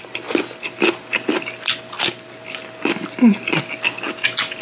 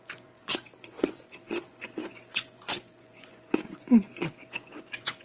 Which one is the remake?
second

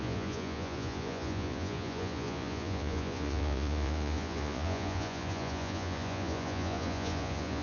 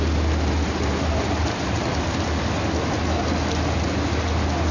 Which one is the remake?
first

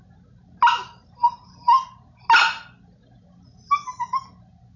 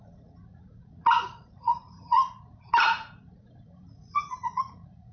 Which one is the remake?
second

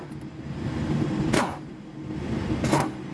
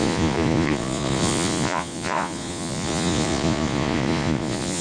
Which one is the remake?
second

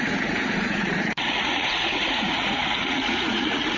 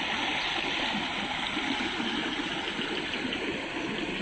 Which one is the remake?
first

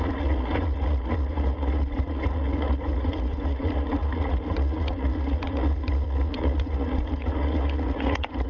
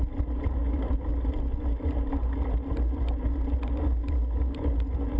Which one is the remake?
first